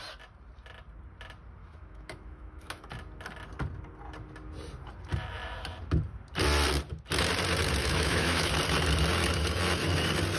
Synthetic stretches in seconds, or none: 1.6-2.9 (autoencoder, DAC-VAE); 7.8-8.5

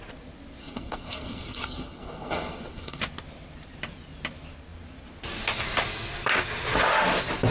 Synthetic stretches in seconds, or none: 0.6-3.0 (codec, SNAC)

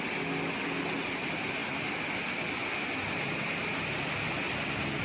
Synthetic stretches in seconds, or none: none